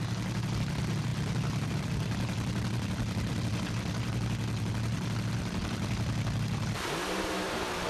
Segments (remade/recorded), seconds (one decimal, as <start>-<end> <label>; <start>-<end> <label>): 0.0-1.1 recorded; 1.1-3.7 remade; 3.7-7.9 recorded